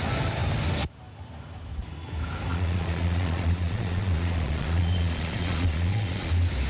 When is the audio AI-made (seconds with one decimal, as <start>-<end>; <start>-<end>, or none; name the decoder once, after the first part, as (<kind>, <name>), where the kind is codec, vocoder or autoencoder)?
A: 2.5-6.3 (vocoder, Vocos)